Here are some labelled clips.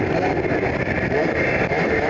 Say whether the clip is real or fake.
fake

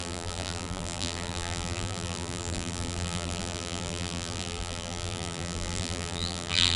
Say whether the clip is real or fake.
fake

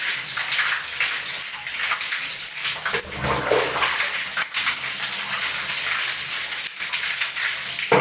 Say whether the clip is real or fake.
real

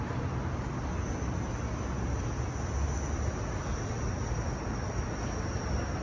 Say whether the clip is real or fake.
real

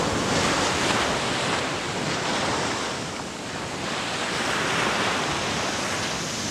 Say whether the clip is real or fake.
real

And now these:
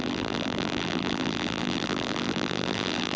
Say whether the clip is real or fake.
fake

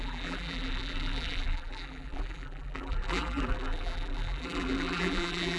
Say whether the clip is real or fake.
fake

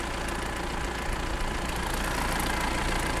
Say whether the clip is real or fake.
real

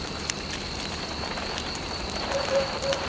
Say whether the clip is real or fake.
fake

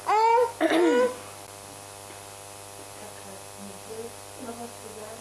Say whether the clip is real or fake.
real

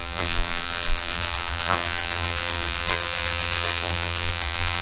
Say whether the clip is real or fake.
fake